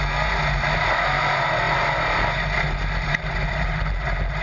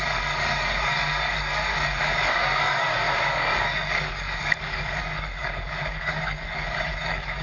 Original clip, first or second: first